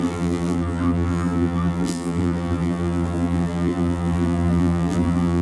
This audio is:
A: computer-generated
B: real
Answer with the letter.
A